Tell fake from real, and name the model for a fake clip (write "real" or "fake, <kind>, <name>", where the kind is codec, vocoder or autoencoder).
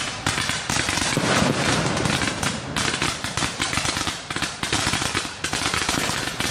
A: fake, vocoder, BigVGAN v2